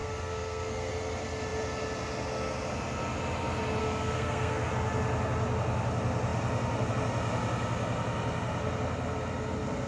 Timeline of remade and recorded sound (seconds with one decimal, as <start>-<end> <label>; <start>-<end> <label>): 0.0-0.9 remade; 0.9-3.8 recorded; 3.8-4.7 remade; 4.7-9.9 recorded